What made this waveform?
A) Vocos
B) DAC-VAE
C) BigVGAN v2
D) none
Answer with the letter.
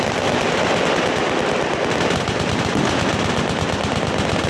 D